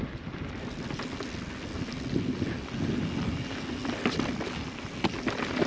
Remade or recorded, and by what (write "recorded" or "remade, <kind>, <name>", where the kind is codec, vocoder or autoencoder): recorded